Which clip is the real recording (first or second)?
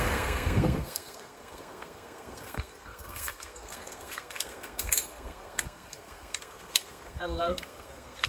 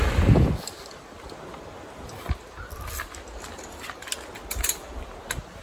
second